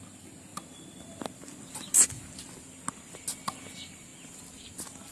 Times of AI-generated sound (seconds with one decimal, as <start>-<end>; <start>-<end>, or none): none